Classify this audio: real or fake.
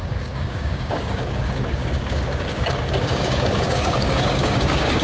fake